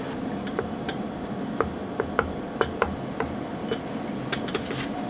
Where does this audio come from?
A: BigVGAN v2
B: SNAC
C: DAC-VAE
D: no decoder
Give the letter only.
D